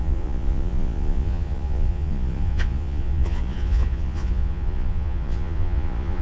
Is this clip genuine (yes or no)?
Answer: no